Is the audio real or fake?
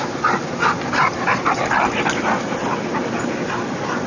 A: real